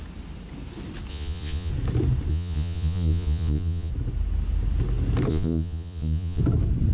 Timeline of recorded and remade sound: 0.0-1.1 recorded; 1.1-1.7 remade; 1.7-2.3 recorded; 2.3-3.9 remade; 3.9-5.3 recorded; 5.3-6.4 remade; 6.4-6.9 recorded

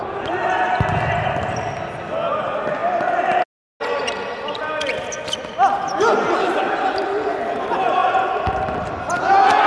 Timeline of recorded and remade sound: 0.0-9.7 recorded

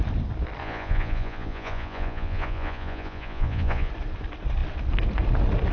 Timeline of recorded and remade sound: 0.0-0.6 recorded; 0.6-3.9 remade; 3.9-5.7 recorded